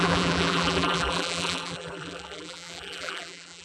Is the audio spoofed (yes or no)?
yes